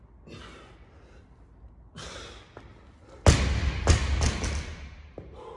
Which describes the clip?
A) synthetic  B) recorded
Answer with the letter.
B